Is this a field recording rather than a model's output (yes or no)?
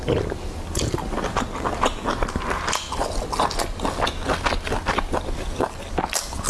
yes